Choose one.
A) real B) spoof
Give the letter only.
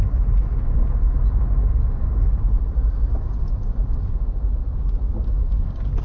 A